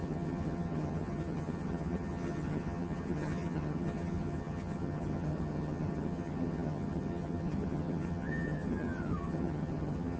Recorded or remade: remade